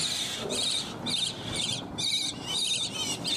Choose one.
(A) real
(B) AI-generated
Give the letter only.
B